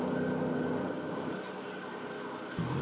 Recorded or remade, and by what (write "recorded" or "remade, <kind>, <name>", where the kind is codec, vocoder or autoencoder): recorded